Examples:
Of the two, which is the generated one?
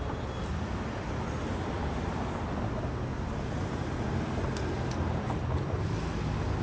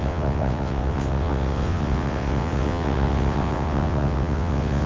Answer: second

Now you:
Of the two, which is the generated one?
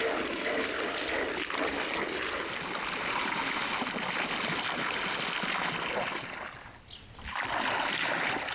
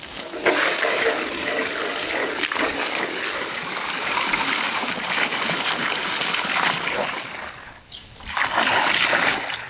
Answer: second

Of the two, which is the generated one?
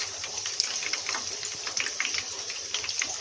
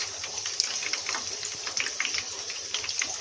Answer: first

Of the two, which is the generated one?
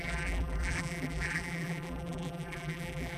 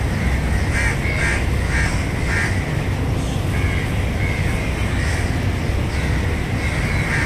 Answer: first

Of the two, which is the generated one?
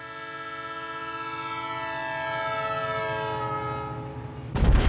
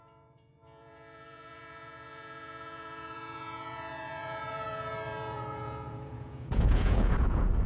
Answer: second